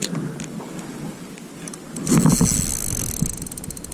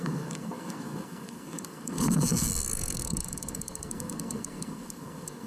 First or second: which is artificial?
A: second